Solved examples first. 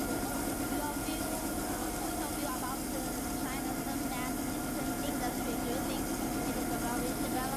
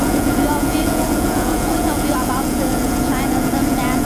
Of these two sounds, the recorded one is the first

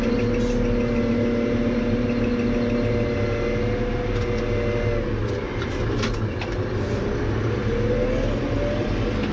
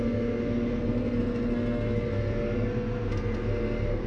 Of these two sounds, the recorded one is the first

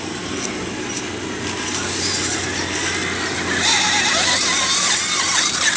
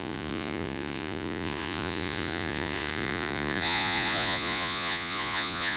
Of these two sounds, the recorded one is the first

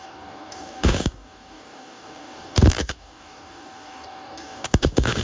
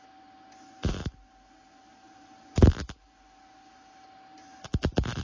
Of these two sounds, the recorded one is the second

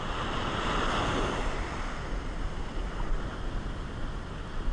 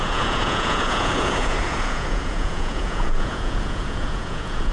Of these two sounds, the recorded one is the first